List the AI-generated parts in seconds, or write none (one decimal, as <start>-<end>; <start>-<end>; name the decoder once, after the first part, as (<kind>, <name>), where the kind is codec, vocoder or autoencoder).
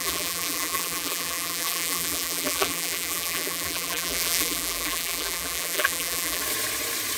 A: 0.0-6.4 (vocoder, BigVGAN v2)